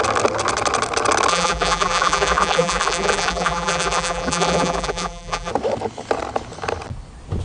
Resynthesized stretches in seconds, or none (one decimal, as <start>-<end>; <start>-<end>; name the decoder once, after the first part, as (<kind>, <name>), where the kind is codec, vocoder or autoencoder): 1.3-5.5 (vocoder, BigVGAN v2)